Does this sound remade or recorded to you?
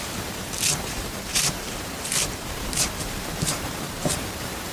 remade